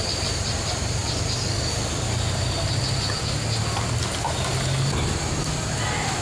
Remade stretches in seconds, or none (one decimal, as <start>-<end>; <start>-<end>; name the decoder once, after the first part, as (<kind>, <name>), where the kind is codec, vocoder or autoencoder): none